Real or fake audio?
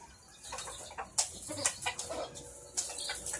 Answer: real